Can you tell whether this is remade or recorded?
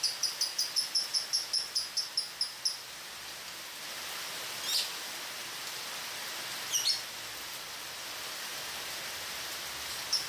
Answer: recorded